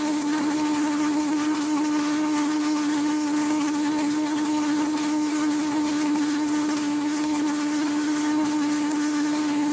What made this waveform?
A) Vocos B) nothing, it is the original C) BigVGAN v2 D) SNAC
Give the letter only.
D